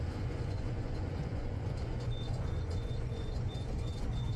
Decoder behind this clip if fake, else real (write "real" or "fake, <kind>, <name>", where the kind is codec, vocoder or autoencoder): fake, vocoder, Vocos